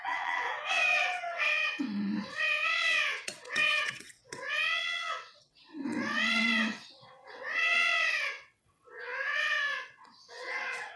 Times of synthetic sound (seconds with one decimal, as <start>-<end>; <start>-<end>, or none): 0.0-11.0